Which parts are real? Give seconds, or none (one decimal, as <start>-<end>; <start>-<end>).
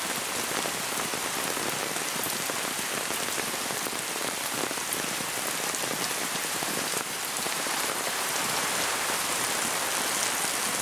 0.0-6.2; 9.5-10.8